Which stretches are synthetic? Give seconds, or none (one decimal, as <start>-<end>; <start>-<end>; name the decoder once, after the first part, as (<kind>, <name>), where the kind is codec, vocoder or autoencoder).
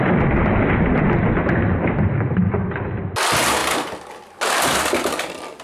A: none